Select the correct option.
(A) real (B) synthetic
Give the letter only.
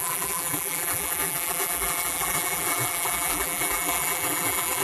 B